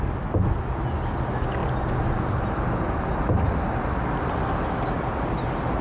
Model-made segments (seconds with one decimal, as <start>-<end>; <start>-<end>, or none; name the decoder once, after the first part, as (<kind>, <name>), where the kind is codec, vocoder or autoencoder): none